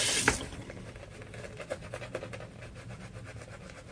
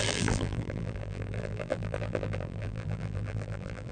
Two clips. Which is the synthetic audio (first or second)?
second